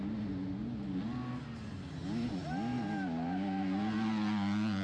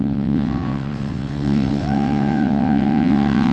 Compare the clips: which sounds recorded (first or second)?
first